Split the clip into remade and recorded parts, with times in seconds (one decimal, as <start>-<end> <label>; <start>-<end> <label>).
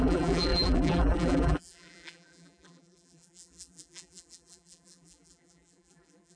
0.0-6.4 remade